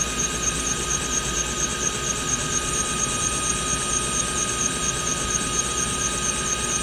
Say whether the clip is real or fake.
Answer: real